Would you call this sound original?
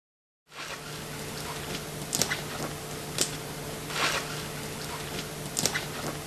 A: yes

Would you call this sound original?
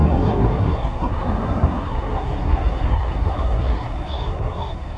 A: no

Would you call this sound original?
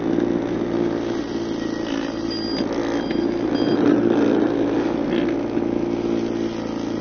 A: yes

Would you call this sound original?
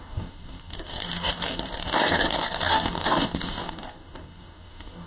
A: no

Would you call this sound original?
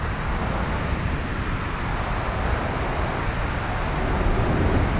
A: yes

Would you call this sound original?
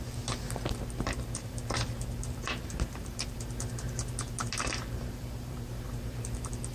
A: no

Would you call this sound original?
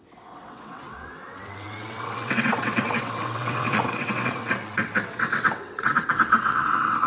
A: no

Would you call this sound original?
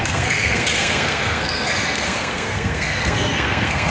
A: no